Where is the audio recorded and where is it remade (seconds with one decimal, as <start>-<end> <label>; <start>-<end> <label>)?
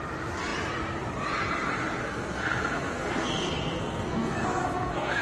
0.0-2.0 recorded; 2.0-5.2 remade